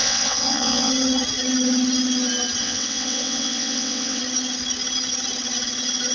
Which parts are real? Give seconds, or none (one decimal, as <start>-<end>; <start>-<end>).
0.9-2.6; 4.2-6.1